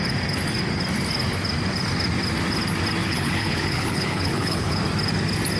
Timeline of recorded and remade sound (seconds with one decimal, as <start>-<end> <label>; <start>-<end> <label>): 0.0-3.0 recorded; 3.0-4.8 remade; 4.8-5.6 recorded